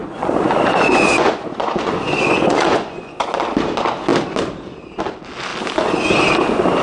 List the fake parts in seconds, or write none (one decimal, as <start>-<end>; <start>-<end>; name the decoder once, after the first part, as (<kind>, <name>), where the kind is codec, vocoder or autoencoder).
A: 0.0-3.3 (vocoder, Vocos)